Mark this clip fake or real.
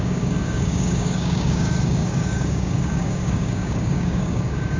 fake